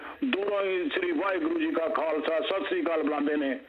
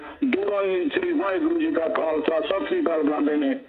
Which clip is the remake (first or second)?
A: second